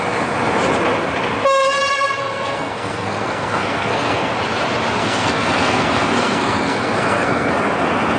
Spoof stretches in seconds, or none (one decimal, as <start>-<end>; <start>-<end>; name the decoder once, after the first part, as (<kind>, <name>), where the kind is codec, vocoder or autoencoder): 1.9-4.3 (codec, SNAC); 5.0-7.5